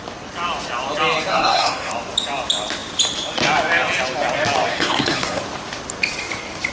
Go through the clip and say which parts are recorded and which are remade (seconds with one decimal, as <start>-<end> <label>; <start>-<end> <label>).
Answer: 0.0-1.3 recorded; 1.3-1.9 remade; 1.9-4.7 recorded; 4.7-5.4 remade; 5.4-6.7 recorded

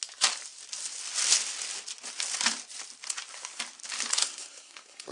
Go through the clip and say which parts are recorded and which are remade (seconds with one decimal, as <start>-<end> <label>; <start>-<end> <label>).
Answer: 0.0-4.2 recorded; 4.2-5.1 remade

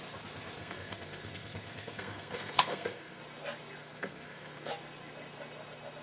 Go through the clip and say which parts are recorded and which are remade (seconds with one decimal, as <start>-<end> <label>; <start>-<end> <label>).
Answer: 0.0-0.6 recorded; 0.6-3.2 remade; 3.2-3.8 recorded; 3.8-4.7 remade; 4.7-6.0 recorded

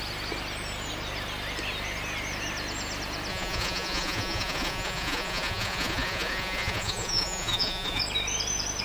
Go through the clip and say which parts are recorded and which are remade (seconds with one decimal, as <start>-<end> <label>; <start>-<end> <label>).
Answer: 0.0-3.3 recorded; 3.3-8.0 remade; 8.0-8.8 recorded

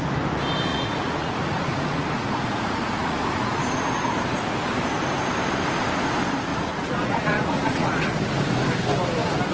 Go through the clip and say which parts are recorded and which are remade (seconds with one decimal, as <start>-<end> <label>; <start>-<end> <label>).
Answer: 0.0-0.7 recorded; 0.7-3.7 remade; 3.7-6.5 recorded; 6.5-8.2 remade; 8.2-9.5 recorded

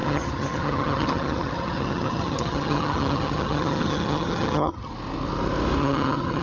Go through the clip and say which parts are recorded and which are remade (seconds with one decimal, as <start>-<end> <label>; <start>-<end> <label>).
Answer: 0.0-4.9 remade; 4.9-5.8 recorded; 5.8-6.4 remade

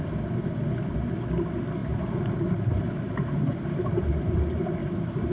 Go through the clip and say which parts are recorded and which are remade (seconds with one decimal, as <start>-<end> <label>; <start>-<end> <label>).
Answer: 0.0-1.8 recorded; 1.8-4.0 remade; 4.0-5.3 recorded

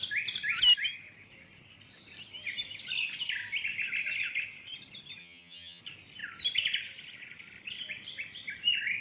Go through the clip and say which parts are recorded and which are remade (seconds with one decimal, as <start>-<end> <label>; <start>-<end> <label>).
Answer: 0.0-5.2 recorded; 5.2-5.8 remade; 5.8-9.0 recorded